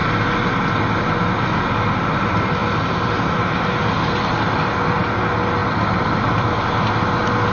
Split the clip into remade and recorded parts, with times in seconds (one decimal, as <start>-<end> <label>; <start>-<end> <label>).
0.0-7.5 recorded